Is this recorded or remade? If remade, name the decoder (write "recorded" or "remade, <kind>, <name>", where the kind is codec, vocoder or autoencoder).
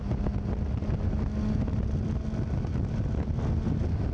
recorded